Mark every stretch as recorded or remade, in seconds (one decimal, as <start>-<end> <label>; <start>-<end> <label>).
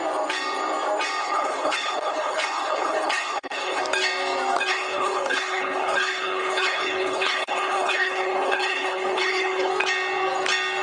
0.0-1.2 recorded; 1.2-3.8 remade; 3.8-4.7 recorded; 4.7-9.7 remade; 9.7-10.8 recorded